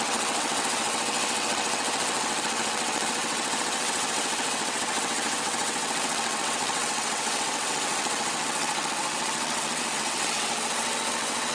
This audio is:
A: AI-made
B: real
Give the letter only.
A